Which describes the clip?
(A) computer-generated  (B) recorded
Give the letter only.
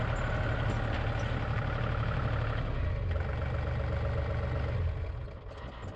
B